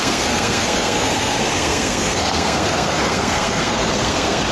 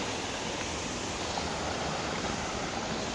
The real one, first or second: second